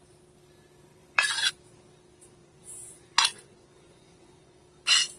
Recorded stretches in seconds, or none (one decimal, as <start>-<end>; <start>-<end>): 0.0-0.9; 1.5-2.4; 4.6-5.2